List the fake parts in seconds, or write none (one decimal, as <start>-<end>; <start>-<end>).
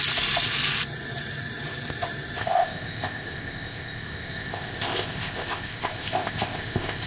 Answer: 2.4-7.1